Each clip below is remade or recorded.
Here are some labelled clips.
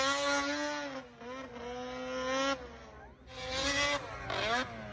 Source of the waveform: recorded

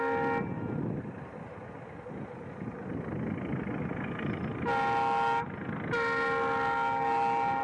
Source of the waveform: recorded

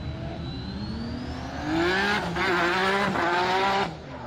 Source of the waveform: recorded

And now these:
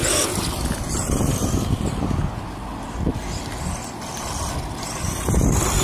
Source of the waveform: recorded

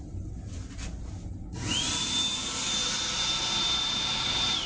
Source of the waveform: recorded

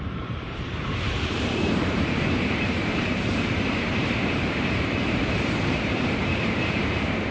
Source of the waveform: remade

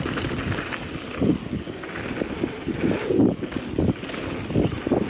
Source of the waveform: recorded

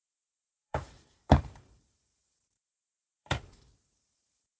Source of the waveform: remade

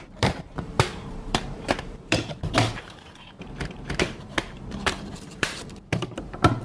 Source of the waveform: remade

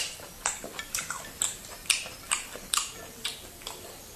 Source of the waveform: remade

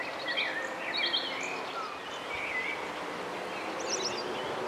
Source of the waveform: recorded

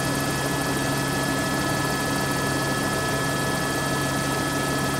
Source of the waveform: recorded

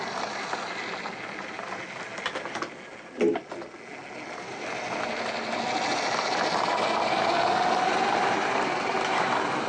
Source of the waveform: recorded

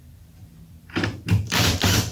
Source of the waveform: remade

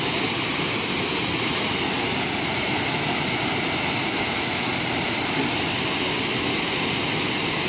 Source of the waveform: recorded